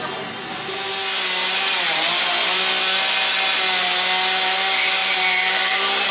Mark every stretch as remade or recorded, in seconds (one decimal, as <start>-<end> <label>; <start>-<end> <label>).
0.0-5.0 recorded; 5.0-6.1 remade